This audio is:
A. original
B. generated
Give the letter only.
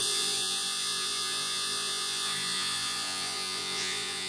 B